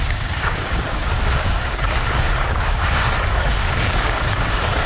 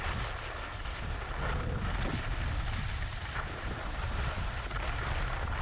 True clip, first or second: second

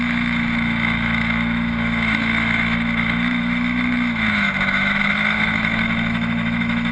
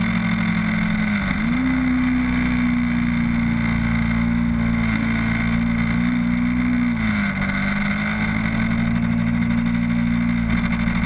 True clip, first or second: second